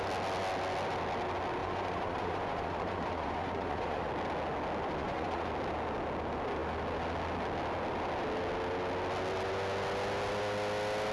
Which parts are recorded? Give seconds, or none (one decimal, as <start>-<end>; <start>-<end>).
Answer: 0.0-1.6; 4.1-5.0; 5.5-11.1